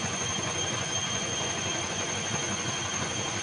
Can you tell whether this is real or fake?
fake